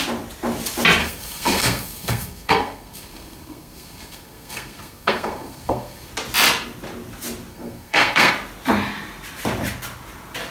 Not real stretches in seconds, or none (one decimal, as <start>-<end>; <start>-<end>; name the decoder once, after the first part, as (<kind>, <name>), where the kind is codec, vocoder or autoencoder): 1.0-6.1 (codec, SNAC); 7.5-8.3